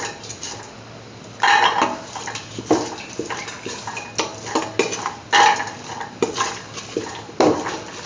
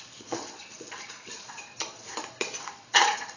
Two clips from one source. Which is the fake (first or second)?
second